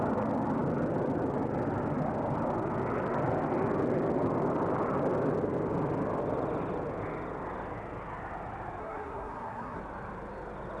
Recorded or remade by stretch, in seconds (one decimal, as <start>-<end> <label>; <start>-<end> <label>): 0.0-8.8 recorded; 8.8-9.8 remade; 9.8-10.8 recorded